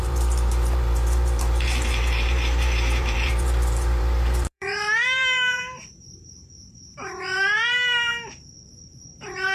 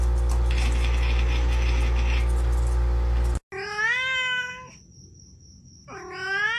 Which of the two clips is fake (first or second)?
first